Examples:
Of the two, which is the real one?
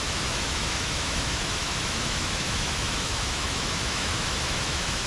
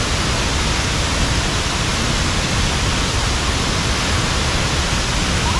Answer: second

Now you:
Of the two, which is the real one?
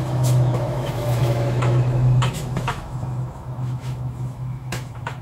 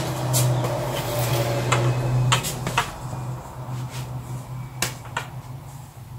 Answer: second